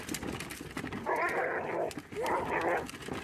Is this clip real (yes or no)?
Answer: yes